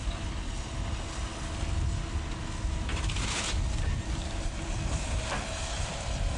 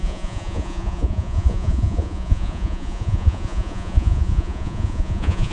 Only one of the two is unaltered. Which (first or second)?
first